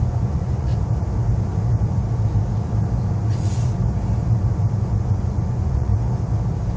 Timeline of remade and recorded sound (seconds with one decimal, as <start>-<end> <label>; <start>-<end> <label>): 0.0-0.7 remade; 0.7-4.8 recorded; 4.8-5.9 remade; 5.9-6.8 recorded